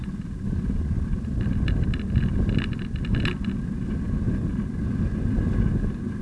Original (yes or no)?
yes